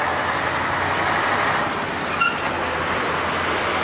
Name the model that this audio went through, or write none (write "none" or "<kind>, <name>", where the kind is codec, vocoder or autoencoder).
none